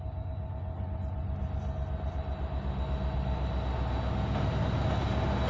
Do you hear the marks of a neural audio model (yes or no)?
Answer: no